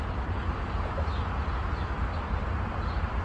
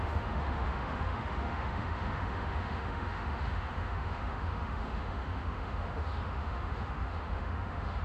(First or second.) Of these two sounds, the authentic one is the first